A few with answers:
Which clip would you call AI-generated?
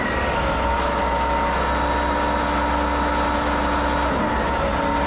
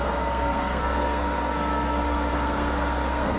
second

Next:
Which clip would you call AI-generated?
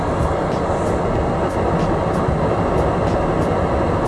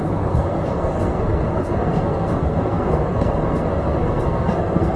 second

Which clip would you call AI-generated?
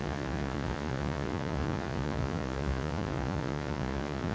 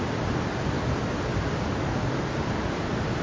first